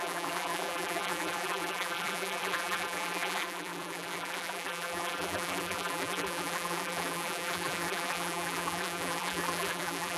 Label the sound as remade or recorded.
remade